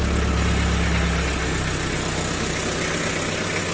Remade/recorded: recorded